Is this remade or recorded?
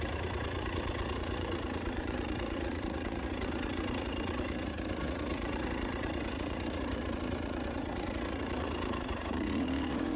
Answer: remade